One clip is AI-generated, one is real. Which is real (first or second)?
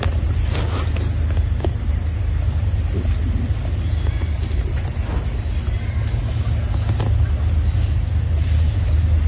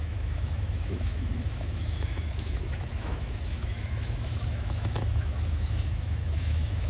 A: first